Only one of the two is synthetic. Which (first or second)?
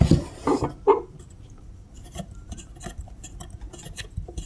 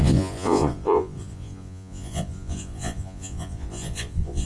second